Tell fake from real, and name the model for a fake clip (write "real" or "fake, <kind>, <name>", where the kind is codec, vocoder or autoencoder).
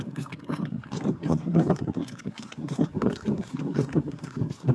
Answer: fake, codec, SNAC